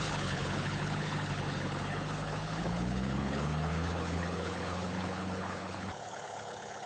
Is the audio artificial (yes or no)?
yes